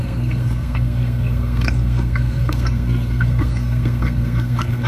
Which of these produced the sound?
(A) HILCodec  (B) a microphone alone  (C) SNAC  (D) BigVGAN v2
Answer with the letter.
C